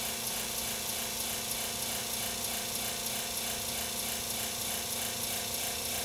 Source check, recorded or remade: recorded